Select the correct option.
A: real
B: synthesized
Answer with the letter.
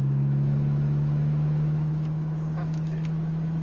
B